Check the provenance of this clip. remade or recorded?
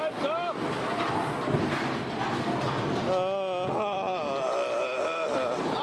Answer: recorded